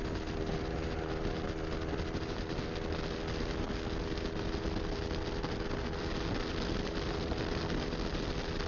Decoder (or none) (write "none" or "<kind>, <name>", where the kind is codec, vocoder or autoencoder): none